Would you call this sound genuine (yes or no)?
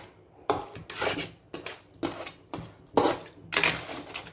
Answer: yes